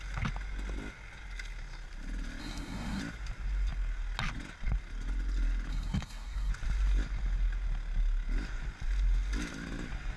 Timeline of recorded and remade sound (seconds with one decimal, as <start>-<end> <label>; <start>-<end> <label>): 0.0-2.4 recorded; 2.4-3.0 remade; 3.0-5.7 recorded; 5.7-6.5 remade; 6.5-10.2 recorded